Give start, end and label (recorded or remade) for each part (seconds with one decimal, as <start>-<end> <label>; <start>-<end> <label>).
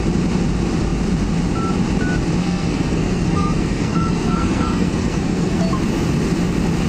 0.0-2.4 recorded; 2.4-5.6 remade; 5.6-6.9 recorded